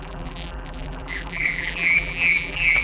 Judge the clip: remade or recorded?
remade